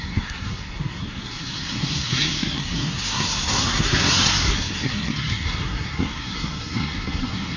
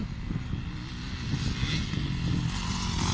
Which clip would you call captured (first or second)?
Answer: second